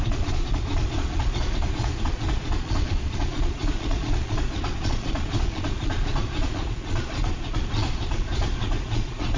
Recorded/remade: remade